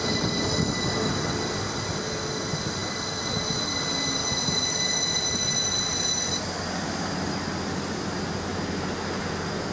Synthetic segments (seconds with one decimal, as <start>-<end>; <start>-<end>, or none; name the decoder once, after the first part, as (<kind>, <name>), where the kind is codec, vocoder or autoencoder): none